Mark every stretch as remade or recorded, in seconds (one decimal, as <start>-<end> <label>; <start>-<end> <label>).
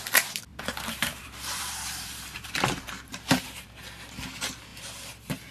0.0-0.5 recorded; 0.5-3.8 remade; 3.8-5.5 recorded